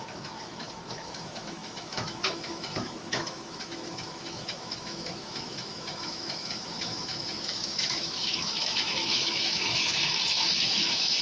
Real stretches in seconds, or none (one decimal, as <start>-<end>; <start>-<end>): none